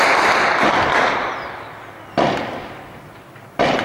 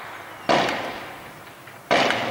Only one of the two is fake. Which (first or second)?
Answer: second